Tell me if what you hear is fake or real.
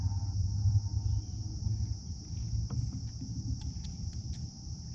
real